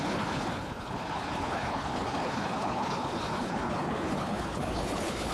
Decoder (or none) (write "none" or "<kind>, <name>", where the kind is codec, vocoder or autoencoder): codec, HILCodec